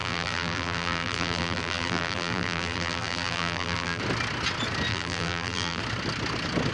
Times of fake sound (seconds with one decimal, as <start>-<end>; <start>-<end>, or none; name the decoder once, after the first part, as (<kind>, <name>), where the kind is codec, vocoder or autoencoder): 0.0-4.0 (vocoder, BigVGAN v2); 4.9-5.8